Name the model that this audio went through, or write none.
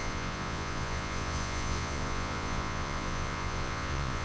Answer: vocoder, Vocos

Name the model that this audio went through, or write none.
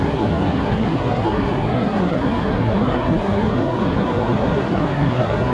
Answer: codec, SNAC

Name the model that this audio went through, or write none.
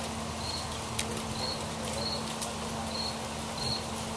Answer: none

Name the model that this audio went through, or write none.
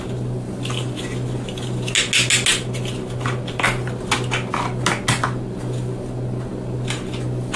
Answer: none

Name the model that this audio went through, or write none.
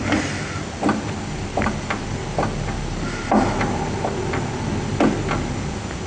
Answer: none